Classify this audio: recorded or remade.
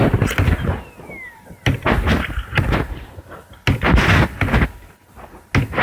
recorded